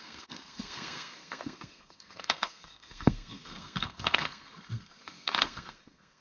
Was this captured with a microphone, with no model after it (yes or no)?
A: no